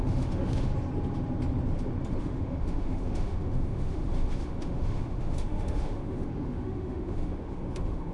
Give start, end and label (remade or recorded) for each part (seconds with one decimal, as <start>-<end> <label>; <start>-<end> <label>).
0.0-0.7 remade; 0.7-2.2 recorded; 2.2-8.1 remade